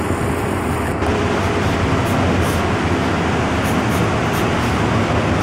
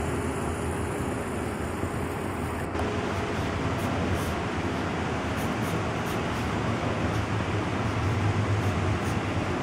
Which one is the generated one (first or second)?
second